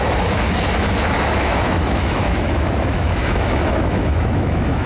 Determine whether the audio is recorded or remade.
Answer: remade